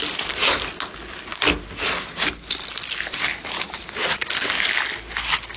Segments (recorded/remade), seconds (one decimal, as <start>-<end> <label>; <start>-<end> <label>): 0.0-5.6 recorded